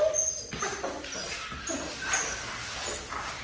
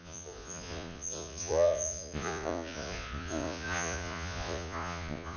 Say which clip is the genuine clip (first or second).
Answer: first